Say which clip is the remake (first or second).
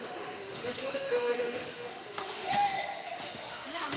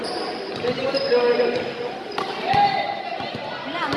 first